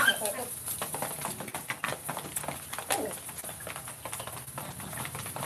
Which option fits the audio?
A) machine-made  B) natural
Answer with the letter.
B